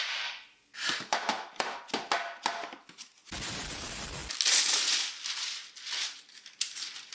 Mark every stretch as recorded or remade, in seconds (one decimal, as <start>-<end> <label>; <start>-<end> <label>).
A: 0.0-7.1 recorded